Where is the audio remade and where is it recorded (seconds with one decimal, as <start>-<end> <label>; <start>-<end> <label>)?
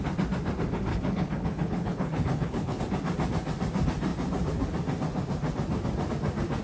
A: 0.0-0.9 recorded; 0.9-2.8 remade; 2.8-6.6 recorded